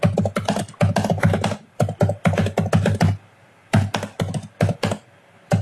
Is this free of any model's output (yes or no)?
yes